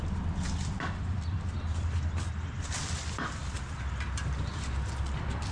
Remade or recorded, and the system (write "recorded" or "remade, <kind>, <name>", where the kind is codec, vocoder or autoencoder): recorded